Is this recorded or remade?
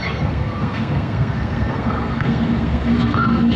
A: remade